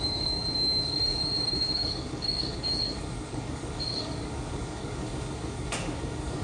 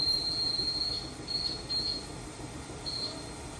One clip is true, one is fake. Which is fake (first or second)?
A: first